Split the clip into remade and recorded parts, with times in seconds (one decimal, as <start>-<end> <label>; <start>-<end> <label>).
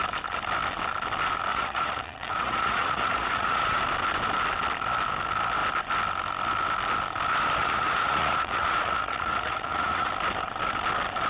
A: 0.0-1.5 recorded; 1.5-3.8 remade; 3.8-7.6 recorded; 7.6-10.1 remade; 10.1-11.3 recorded